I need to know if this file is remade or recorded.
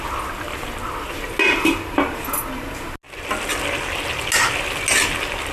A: recorded